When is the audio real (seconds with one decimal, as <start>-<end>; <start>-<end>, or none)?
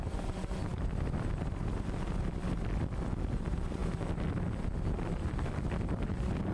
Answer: 3.8-4.6